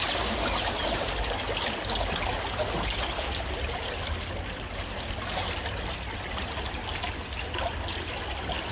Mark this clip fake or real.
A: real